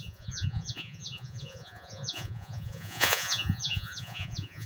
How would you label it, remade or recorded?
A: remade